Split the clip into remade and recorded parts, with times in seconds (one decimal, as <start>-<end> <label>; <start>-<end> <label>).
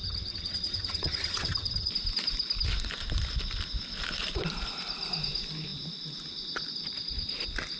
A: 0.0-1.9 remade; 1.9-7.8 recorded